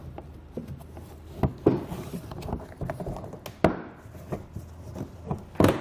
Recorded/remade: recorded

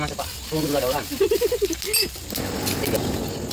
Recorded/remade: recorded